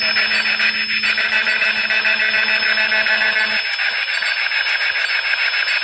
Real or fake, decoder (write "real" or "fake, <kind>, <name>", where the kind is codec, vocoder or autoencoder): real